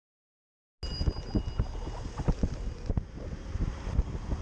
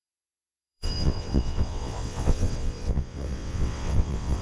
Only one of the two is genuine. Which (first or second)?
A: first